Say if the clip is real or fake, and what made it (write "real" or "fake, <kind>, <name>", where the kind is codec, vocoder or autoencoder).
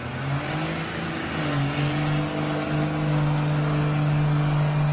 real